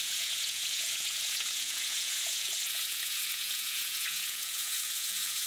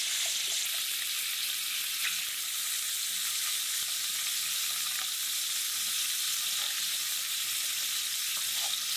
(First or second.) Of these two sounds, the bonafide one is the second